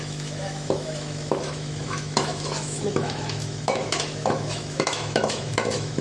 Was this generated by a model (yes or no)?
yes